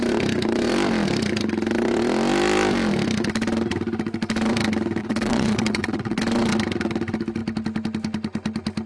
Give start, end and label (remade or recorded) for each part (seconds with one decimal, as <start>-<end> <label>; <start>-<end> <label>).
0.0-5.0 recorded; 5.0-6.2 remade; 6.2-8.9 recorded